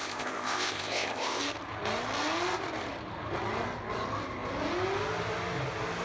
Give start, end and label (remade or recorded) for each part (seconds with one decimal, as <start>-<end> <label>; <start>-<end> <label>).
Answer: 0.0-1.4 remade; 1.4-6.0 recorded